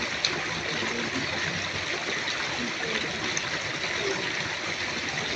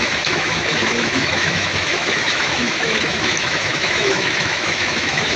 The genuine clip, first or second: first